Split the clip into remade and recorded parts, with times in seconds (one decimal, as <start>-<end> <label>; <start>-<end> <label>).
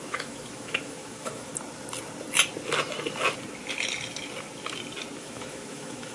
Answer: 0.0-1.5 remade; 1.5-5.2 recorded; 5.2-6.1 remade